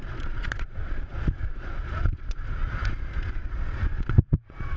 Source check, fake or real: fake